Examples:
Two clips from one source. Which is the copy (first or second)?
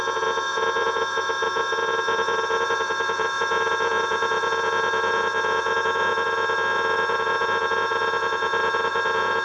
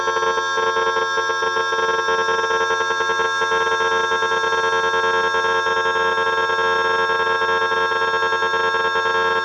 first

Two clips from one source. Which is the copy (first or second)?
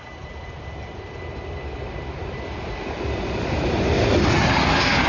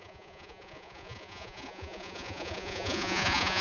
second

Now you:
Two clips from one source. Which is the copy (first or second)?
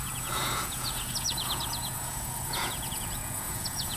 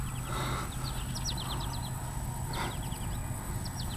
first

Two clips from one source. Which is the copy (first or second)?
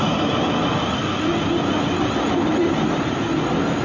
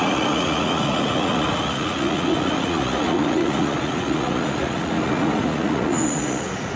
second